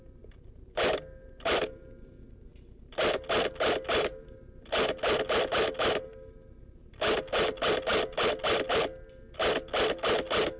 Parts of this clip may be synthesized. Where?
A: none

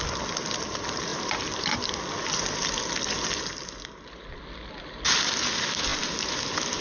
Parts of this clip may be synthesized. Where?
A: none

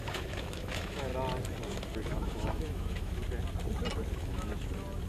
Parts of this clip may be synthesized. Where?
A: 0.0-1.1 (autoencoder, DAC-VAE); 2.1-3.2; 4.1-4.5